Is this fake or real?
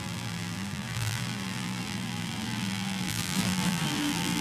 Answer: fake